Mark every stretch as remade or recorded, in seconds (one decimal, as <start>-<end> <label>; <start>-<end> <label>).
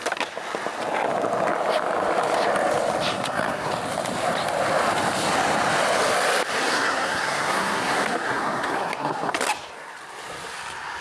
0.0-3.1 recorded; 3.1-3.7 remade; 3.7-6.6 recorded; 6.6-9.3 remade; 9.3-11.0 recorded